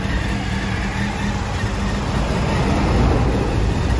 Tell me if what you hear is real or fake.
real